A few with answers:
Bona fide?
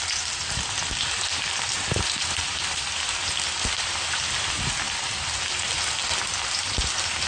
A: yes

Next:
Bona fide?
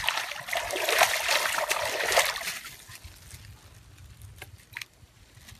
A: yes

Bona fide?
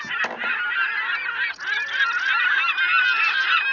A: yes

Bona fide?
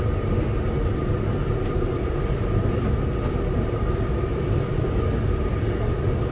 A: yes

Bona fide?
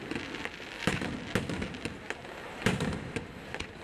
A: yes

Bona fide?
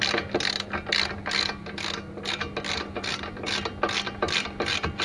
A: yes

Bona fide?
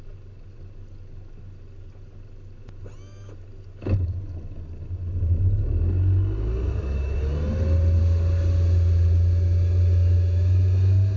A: yes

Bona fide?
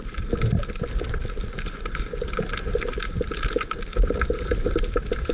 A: no